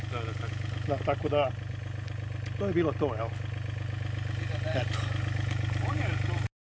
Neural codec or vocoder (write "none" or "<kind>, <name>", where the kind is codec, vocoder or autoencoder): none